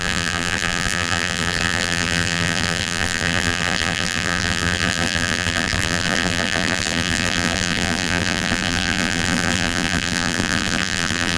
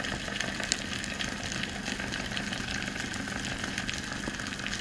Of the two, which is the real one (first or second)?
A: second